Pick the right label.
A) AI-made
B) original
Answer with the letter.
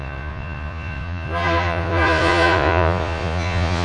A